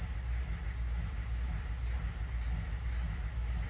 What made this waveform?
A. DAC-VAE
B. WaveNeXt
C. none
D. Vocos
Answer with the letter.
C